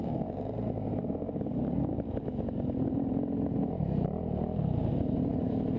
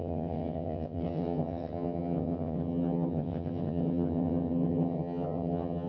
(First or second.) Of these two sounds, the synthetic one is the second